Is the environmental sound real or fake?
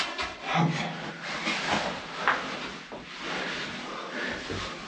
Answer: real